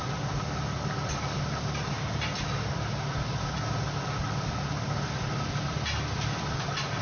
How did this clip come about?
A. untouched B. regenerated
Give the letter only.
A